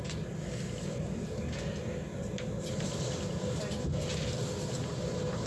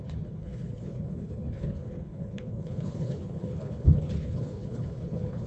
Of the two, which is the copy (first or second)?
second